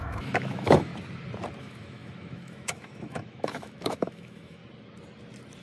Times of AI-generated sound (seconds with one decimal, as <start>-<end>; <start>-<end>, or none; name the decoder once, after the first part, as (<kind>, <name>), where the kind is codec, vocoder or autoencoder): 0.0-0.9 (autoencoder, DAC-VAE); 1.6-4.6

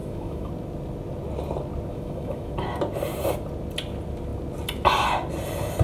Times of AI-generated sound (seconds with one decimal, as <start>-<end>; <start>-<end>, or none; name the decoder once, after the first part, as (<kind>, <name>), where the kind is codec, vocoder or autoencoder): 0.0-0.5 (autoencoder, DAC-VAE); 1.9-2.5

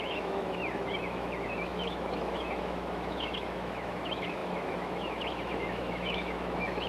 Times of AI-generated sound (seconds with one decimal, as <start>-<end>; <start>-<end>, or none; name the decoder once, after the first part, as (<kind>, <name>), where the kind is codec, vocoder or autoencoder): 0.0-6.9 (autoencoder, DAC-VAE)